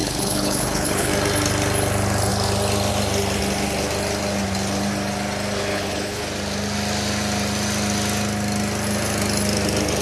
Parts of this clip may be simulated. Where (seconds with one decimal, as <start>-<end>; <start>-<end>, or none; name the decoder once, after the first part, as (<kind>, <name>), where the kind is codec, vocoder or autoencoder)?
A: 0.0-1.1 (codec, HILCodec); 5.7-6.2